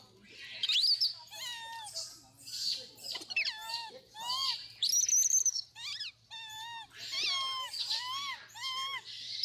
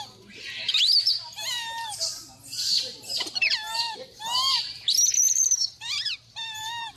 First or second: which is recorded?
first